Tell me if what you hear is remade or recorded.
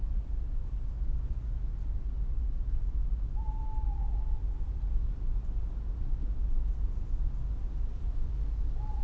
recorded